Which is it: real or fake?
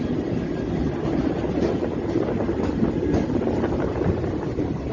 real